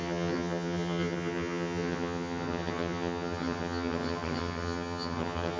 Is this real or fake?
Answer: fake